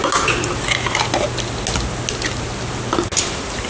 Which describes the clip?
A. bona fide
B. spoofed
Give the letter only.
A